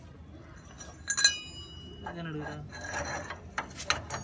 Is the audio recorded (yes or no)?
yes